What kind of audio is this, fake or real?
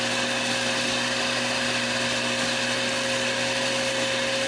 real